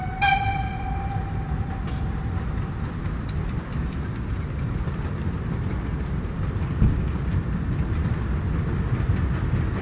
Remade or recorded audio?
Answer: recorded